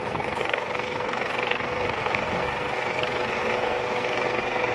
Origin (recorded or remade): remade